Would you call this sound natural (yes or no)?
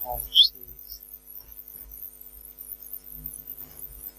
yes